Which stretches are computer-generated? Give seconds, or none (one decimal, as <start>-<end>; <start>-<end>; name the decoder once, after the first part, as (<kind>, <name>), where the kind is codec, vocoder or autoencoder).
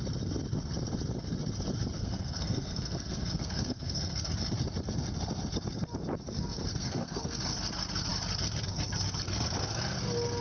2.0-4.3 (codec, SNAC); 6.7-7.4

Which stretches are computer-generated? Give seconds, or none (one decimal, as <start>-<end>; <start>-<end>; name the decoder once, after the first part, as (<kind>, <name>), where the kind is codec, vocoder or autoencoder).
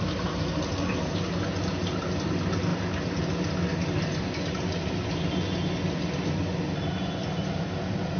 none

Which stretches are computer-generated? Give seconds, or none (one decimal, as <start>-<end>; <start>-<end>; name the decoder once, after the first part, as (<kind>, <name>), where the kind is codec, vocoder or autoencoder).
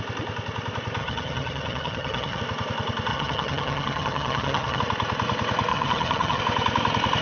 1.0-2.4 (vocoder, HiFi-GAN); 3.1-4.8; 5.7-6.4